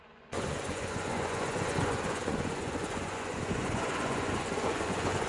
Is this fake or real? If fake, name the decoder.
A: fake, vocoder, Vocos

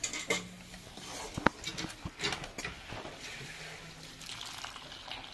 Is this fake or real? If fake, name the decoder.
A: real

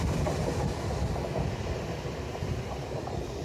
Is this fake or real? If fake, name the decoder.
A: real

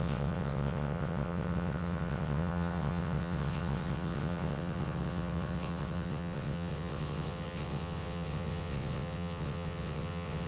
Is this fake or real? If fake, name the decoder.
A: fake, vocoder, WaveNeXt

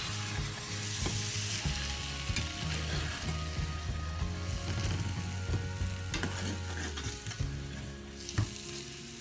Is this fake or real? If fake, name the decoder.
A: real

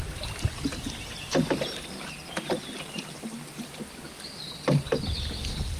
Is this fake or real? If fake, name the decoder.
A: real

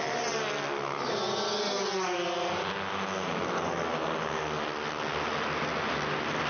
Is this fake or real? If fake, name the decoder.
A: real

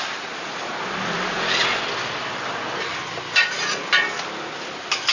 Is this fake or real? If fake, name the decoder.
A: fake, vocoder, BigVGAN v2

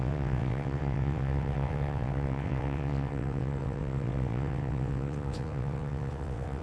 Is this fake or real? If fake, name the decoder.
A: fake, vocoder, WaveNeXt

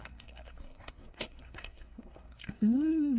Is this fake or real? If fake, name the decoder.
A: fake, codec, SNAC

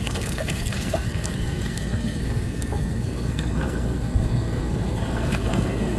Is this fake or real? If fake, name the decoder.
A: fake, codec, SNAC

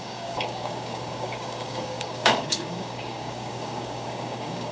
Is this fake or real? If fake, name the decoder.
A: fake, codec, DAC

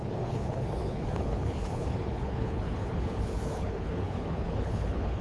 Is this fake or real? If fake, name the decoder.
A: fake, codec, HILCodec